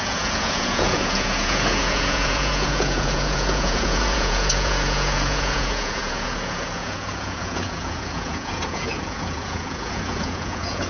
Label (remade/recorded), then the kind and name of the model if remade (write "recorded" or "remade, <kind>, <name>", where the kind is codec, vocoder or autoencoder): remade, vocoder, Vocos